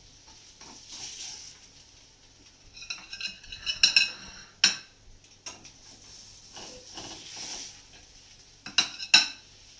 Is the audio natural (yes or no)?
yes